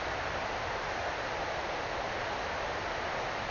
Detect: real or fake real